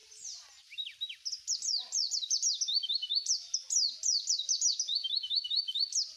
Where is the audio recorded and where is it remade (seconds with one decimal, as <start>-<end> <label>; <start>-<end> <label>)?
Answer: 0.0-6.2 recorded